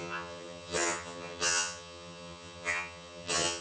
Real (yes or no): no